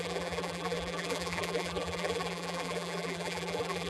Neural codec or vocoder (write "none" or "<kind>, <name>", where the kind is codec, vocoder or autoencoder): vocoder, BigVGAN v2